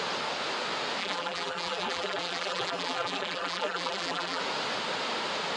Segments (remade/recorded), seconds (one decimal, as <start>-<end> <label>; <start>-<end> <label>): 0.0-1.0 recorded; 1.0-4.4 remade; 4.4-5.6 recorded